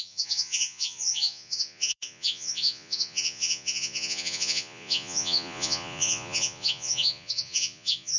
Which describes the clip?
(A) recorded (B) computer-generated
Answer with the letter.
B